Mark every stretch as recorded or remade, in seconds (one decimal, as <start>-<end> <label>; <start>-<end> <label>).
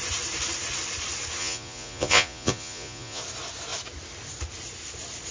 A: 0.0-1.4 recorded; 1.4-3.2 remade; 3.2-5.3 recorded